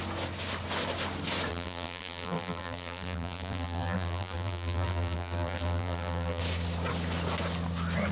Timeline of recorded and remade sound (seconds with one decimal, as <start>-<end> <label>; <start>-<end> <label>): 0.0-1.5 recorded; 1.5-6.4 remade; 6.4-8.1 recorded